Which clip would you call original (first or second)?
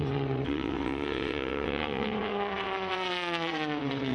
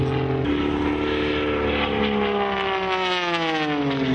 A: second